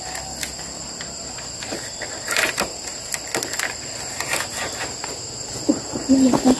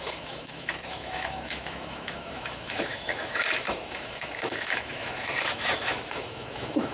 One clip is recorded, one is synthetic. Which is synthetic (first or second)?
second